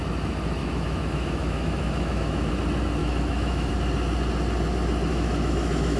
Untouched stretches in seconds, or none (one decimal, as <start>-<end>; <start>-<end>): 0.0-0.6; 2.5-3.0; 3.7-5.1